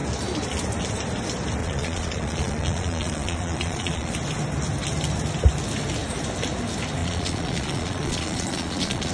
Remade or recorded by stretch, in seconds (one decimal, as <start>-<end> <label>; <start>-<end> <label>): 0.0-1.6 recorded; 1.6-4.1 remade; 4.1-7.0 recorded; 7.0-9.1 remade